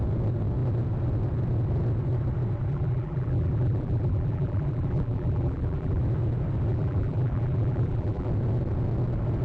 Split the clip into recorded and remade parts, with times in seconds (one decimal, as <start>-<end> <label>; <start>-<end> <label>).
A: 0.0-2.7 recorded; 2.7-6.0 remade; 6.0-6.7 recorded; 6.7-8.3 remade; 8.3-9.4 recorded